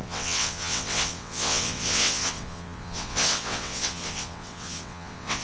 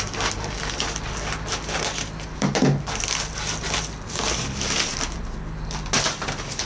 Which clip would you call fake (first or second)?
first